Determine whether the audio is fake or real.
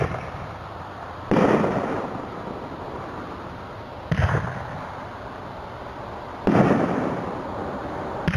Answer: real